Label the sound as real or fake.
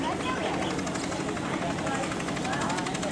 real